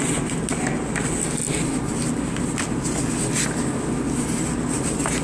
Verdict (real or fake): real